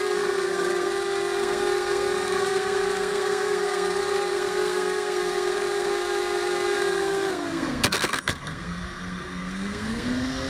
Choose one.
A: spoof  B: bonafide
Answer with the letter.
A